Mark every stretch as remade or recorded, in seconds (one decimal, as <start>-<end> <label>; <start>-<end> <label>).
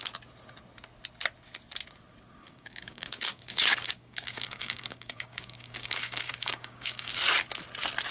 0.0-2.4 recorded; 2.4-7.2 remade; 7.2-8.1 recorded